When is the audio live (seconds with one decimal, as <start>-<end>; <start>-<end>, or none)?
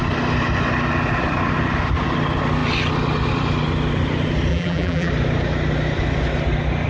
0.0-4.5; 5.1-6.9